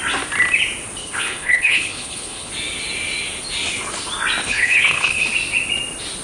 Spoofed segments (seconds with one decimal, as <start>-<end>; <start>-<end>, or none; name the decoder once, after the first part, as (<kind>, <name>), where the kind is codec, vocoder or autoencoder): 1.0-2.5 (codec, HILCodec); 4.4-5.3